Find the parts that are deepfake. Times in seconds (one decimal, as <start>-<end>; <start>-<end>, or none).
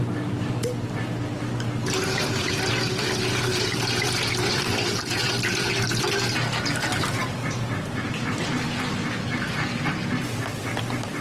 1.8-2.7